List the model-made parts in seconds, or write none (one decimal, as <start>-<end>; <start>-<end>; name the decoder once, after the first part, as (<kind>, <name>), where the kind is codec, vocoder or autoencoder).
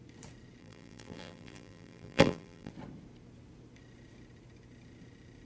0.6-2.7 (vocoder, BigVGAN v2)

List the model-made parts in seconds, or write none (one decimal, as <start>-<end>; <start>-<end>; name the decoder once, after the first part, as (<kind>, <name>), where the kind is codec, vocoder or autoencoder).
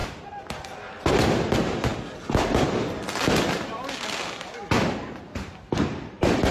none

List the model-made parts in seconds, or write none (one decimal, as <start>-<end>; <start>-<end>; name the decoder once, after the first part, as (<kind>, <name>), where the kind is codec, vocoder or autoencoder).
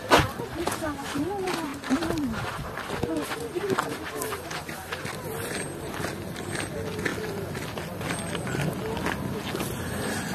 none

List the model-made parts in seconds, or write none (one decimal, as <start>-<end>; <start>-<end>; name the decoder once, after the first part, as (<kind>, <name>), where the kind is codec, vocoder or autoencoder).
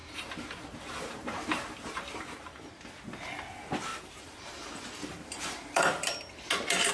0.0-2.6 (vocoder, BigVGAN v2); 3.9-4.4; 5.0-6.3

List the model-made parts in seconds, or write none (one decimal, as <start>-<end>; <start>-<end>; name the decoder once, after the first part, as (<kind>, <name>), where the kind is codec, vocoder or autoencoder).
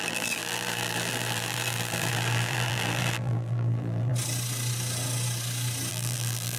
0.0-4.1 (vocoder, BigVGAN v2); 5.9-6.6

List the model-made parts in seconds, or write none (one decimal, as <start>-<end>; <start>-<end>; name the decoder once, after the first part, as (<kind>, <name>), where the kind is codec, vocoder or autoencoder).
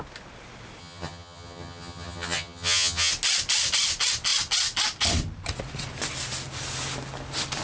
0.8-3.1 (vocoder, HiFi-GAN)